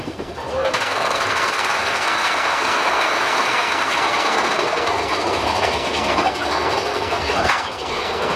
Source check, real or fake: fake